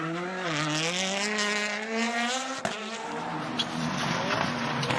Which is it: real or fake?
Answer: real